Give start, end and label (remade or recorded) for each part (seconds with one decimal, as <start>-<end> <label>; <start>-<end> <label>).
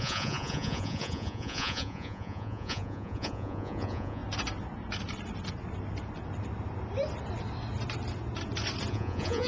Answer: 0.0-4.2 remade; 4.2-8.9 recorded; 8.9-9.5 remade